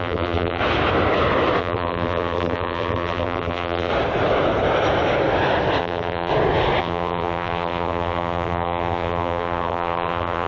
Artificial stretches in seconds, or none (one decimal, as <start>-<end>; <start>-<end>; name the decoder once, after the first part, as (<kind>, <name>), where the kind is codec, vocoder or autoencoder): 0.0-0.6 (vocoder, BigVGAN v2); 1.6-3.9; 5.8-6.3; 6.8-10.5